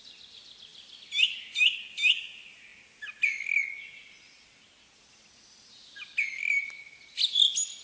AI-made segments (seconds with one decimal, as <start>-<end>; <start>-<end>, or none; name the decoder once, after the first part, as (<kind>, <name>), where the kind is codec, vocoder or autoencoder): none